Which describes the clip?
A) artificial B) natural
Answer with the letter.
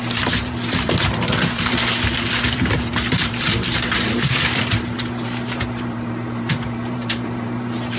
A